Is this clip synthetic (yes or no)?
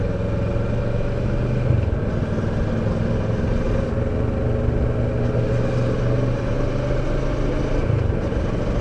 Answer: no